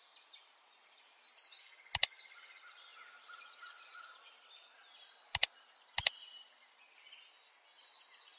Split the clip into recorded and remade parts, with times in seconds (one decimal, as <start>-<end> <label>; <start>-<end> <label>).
0.0-8.4 recorded